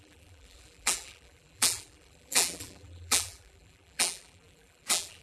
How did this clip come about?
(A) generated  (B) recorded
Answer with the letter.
A